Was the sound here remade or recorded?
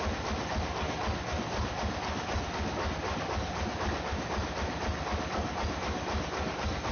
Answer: recorded